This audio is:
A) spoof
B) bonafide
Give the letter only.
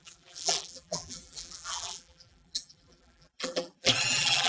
A